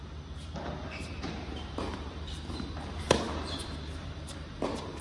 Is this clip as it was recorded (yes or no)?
no